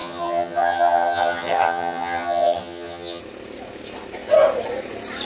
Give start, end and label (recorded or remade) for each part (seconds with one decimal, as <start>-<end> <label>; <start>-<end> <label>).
0.0-3.2 remade; 3.2-5.3 recorded